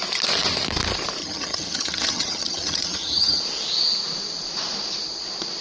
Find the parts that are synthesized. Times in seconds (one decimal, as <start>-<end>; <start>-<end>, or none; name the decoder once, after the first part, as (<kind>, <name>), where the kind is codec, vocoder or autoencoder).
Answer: 1.2-3.4 (vocoder, HiFi-GAN)